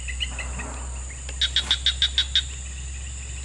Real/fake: real